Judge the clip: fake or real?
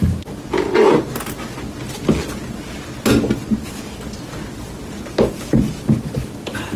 real